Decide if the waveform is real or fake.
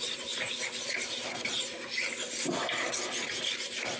real